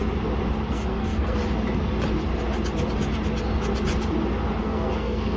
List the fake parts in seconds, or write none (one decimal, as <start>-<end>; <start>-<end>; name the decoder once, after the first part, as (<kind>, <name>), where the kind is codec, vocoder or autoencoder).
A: 0.7-1.4 (codec, SNAC); 4.6-5.4